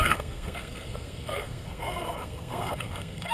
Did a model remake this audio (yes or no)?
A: yes